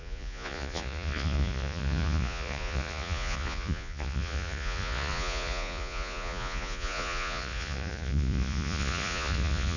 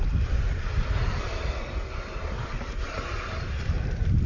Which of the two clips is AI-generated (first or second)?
first